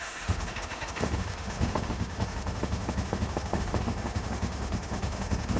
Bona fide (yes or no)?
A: no